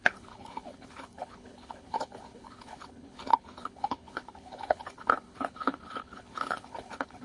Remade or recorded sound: remade